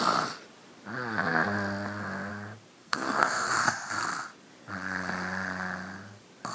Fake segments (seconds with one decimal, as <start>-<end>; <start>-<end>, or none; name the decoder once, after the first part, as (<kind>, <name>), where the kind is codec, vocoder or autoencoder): 2.8-3.5 (codec, SNAC)